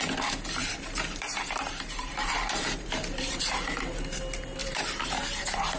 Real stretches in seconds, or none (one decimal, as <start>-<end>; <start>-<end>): 0.0-0.6; 4.1-4.6